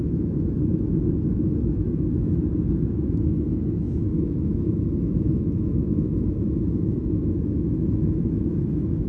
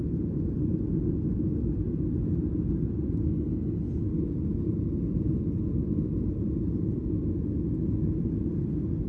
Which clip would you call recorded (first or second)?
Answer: second